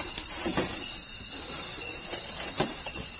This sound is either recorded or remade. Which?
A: recorded